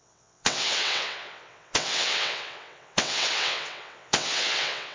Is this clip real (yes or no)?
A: no